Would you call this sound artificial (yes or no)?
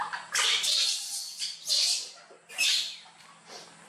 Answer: no